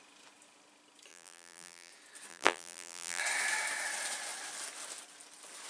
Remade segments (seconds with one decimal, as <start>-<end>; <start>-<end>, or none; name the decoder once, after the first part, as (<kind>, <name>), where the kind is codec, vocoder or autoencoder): 1.1-1.9 (vocoder, BigVGAN v2); 2.3-3.2